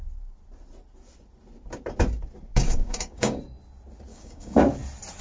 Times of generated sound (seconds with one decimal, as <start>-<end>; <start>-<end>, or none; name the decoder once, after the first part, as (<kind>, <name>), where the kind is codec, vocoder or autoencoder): 2.5-3.4 (codec, DAC); 4.1-4.6